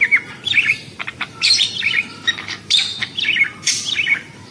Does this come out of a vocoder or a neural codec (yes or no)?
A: yes